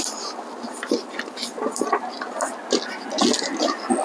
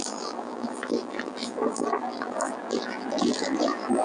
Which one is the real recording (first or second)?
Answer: first